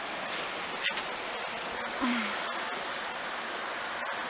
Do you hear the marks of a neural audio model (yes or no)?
no